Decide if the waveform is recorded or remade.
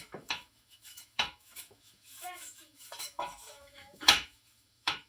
remade